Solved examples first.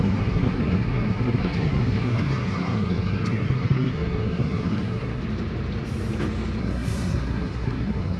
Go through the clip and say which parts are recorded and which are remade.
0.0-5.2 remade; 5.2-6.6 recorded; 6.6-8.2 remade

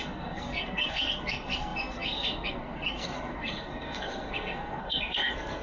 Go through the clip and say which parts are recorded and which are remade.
0.0-5.6 remade

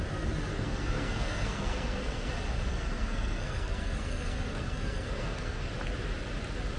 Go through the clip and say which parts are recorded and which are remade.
0.0-0.5 recorded; 0.5-2.3 remade; 2.3-2.7 recorded; 2.7-5.7 remade; 5.7-6.8 recorded

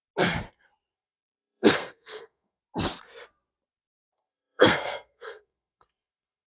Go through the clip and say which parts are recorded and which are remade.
0.0-0.9 recorded; 0.9-2.6 remade; 2.6-4.1 recorded; 4.1-6.6 remade

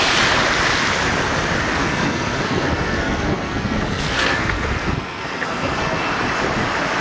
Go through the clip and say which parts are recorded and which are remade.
0.0-1.8 recorded; 1.8-6.0 remade; 6.0-7.0 recorded